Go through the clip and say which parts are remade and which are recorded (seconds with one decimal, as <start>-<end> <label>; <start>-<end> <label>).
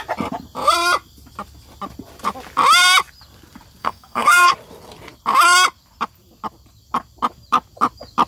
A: 0.0-3.8 recorded; 3.8-4.5 remade; 4.5-8.3 recorded